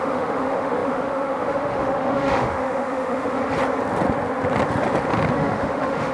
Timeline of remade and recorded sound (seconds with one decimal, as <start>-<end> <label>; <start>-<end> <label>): 0.0-3.4 remade; 3.4-5.3 recorded; 5.3-6.1 remade